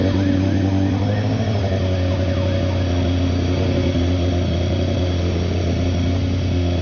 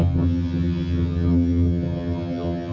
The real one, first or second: first